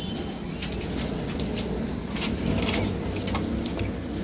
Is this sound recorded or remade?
recorded